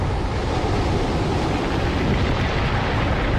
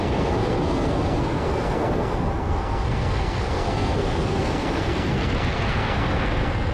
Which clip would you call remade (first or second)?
second